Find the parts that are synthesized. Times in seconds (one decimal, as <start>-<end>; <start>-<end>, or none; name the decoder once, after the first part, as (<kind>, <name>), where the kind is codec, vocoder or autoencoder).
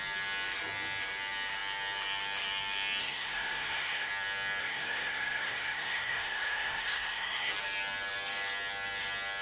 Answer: 3.0-4.1 (codec, SNAC); 4.6-7.5